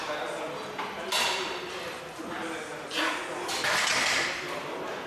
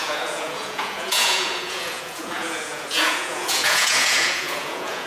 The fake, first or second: second